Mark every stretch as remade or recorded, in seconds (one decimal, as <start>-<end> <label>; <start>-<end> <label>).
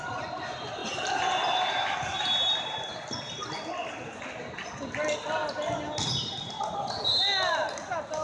0.0-8.2 recorded